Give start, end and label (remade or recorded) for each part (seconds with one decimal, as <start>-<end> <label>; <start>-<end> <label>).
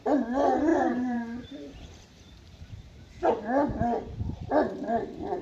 0.0-0.7 recorded; 0.7-3.3 remade; 3.3-5.4 recorded